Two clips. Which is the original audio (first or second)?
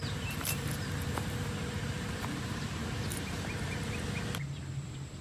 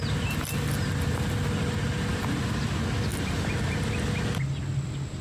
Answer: second